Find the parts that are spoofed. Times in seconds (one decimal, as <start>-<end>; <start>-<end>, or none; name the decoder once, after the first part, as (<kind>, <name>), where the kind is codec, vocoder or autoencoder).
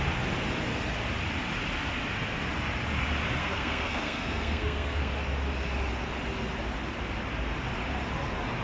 3.4-5.1 (codec, SNAC)